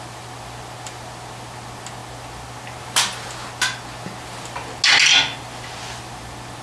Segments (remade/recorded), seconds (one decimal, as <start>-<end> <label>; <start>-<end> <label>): 0.0-6.6 recorded